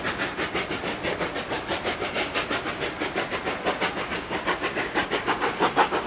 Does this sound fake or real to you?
real